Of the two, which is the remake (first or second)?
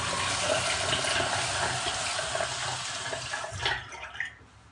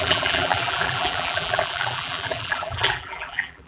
second